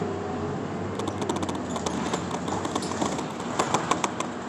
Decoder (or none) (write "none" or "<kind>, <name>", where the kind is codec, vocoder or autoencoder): none